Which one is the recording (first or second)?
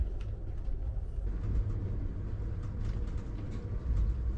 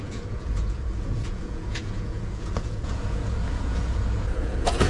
first